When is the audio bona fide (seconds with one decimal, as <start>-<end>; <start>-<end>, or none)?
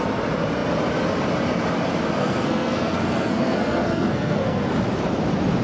0.0-2.2; 4.7-5.6